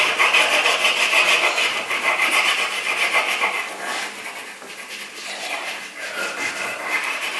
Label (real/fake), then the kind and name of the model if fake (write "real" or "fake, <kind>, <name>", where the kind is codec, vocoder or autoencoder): fake, vocoder, BigVGAN v2